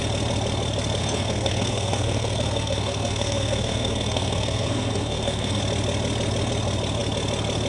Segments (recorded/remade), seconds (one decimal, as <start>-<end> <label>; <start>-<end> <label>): 0.0-1.0 recorded; 1.0-5.6 remade; 5.6-7.7 recorded